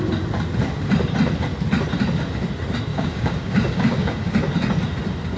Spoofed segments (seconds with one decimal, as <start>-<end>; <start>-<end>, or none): 2.9-4.3